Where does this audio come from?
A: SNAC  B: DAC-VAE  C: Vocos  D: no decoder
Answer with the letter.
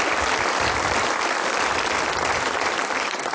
D